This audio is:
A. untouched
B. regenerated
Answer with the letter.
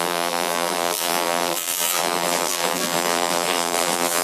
B